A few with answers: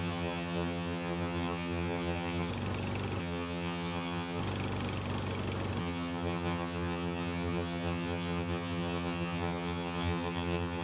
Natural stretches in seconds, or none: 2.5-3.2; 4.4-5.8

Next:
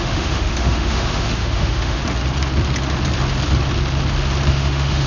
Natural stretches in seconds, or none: 2.0-4.5

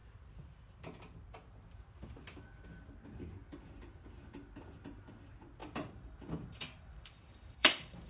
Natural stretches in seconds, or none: 0.0-5.6